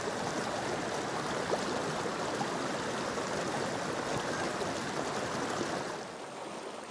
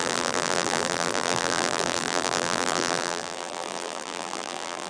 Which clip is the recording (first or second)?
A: first